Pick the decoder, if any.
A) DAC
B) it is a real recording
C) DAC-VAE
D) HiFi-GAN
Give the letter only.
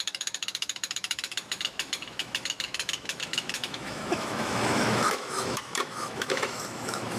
C